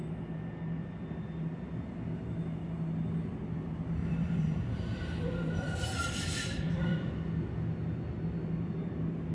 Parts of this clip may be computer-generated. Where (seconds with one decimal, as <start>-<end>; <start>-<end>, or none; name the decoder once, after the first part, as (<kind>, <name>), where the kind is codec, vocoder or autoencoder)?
4.0-7.1 (vocoder, BigVGAN v2)